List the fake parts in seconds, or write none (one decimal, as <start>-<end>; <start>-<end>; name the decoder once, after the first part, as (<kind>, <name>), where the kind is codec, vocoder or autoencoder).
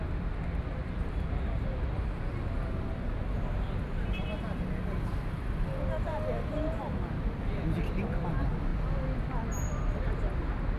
none